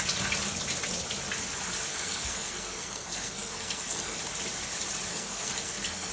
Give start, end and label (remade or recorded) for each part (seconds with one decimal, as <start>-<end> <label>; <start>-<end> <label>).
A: 0.0-1.9 recorded; 1.9-4.2 remade; 4.2-5.1 recorded; 5.1-6.1 remade